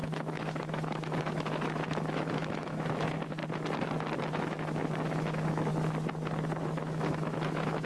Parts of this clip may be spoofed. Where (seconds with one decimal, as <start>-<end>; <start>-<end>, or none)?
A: 0.0-3.4; 4.3-5.7; 6.6-7.9